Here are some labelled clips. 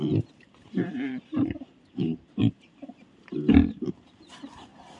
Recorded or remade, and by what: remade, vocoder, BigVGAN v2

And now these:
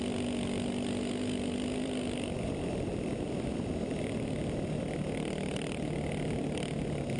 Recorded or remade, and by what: recorded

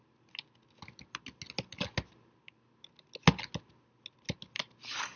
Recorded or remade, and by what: recorded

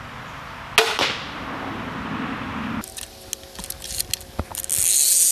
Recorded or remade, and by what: recorded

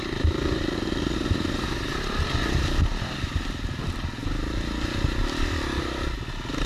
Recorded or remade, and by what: recorded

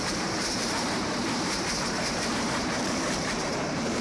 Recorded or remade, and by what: remade, vocoder, BigVGAN v2